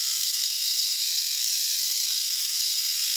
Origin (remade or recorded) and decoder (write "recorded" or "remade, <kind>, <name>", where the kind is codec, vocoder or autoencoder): remade, codec, SNAC